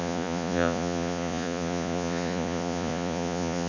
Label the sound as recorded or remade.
remade